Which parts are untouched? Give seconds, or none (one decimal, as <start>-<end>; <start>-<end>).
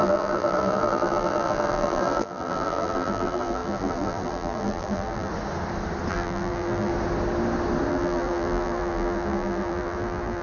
5.3-6.1; 6.9-7.9